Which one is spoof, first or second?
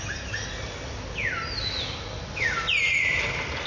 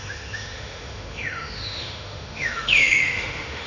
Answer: second